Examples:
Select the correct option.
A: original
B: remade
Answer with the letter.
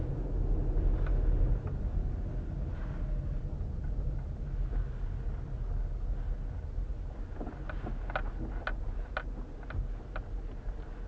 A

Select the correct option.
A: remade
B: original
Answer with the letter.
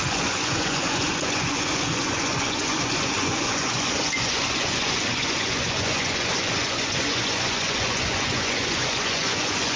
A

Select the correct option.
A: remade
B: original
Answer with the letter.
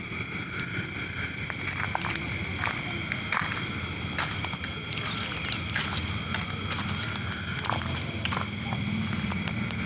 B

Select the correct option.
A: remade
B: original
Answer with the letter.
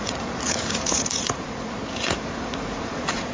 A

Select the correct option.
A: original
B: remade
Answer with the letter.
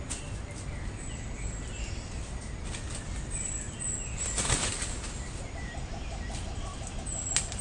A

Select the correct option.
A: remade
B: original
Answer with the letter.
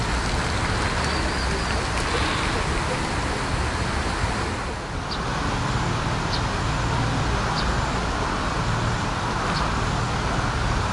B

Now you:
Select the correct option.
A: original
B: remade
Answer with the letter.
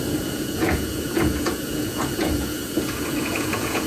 B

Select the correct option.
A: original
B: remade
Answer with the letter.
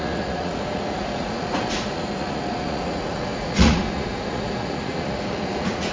B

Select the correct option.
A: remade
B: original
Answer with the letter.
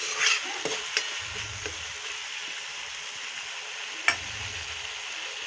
B